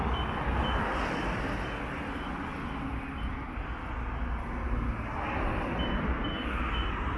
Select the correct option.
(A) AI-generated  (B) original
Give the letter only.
B